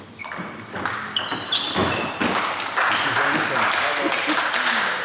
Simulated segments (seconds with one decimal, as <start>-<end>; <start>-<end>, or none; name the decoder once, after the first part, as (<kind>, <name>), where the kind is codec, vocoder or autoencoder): none

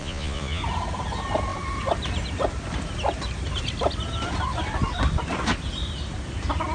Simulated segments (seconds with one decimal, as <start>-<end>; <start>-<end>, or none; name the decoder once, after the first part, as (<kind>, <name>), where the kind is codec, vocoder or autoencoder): 0.0-0.6 (vocoder, Vocos)